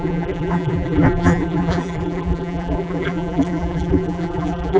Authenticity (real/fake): fake